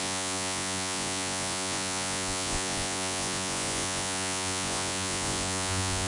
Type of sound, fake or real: fake